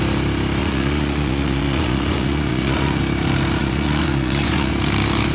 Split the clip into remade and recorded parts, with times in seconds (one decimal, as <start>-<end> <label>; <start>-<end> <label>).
0.0-0.6 recorded; 0.6-3.0 remade; 3.0-3.6 recorded; 3.6-4.7 remade; 4.7-5.3 recorded